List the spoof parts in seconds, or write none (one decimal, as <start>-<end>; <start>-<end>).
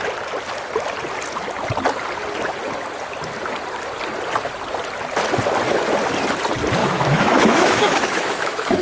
6.8-8.8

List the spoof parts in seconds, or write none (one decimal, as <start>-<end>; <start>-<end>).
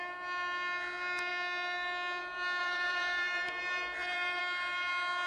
2.6-4.4